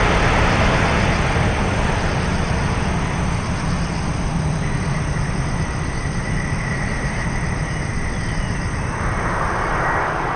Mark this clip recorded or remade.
recorded